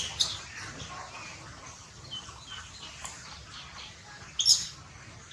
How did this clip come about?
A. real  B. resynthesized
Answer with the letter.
A